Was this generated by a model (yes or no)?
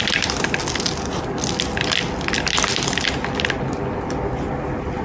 no